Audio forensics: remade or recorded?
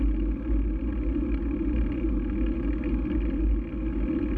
recorded